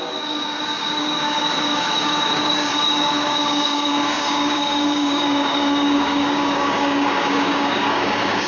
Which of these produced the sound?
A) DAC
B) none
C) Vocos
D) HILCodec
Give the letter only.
A